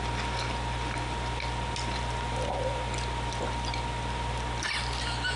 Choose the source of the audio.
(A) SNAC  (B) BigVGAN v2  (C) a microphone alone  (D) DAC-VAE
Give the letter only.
C